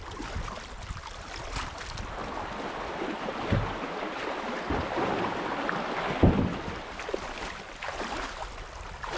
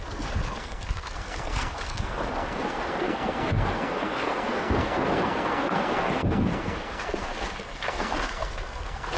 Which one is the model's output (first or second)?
second